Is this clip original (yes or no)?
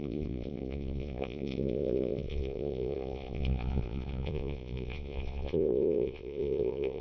no